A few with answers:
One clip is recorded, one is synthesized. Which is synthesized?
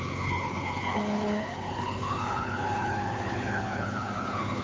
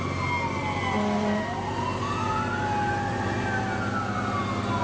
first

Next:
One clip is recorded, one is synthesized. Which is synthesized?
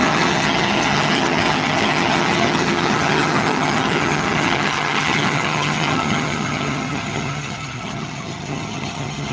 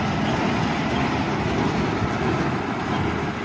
first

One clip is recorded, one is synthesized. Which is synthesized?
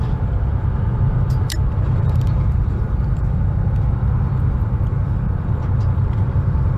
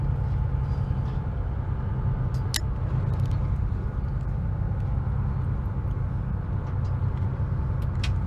first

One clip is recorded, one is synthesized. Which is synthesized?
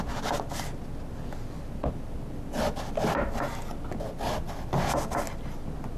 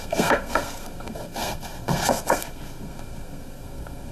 second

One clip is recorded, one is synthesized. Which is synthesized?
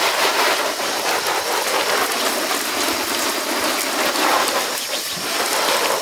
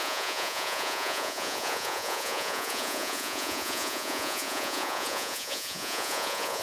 second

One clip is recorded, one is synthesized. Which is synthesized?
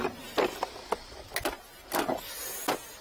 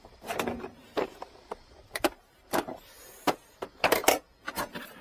second